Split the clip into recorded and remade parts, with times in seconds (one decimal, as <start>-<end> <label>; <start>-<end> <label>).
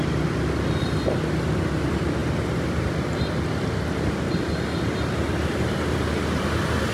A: 0.0-6.9 recorded